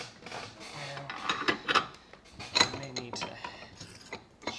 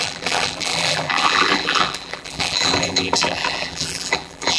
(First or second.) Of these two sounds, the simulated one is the second